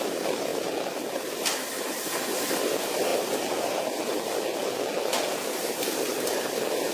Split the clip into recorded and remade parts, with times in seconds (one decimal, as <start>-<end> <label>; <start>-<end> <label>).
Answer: 0.0-6.9 recorded